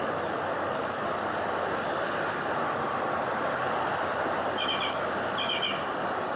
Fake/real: real